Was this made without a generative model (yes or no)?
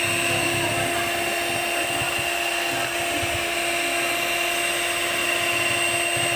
yes